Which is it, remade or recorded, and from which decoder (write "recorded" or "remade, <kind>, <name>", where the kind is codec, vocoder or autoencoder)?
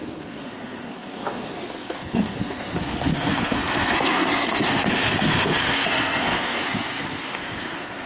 remade, codec, SNAC